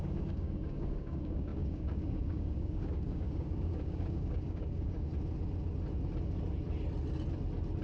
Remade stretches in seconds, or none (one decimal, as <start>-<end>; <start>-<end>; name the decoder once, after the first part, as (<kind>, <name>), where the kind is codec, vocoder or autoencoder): 0.0-5.1 (codec, DAC)